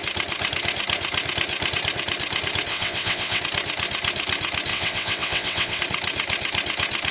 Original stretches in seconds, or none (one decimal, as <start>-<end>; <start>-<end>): 0.0-2.7; 3.4-4.7; 5.8-7.1